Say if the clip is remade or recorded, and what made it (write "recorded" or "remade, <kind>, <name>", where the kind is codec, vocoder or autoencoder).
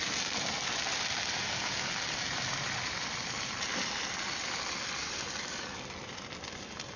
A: remade, vocoder, BigVGAN v2